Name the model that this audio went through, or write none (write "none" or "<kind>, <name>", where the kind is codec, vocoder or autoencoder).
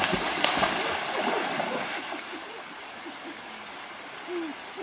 none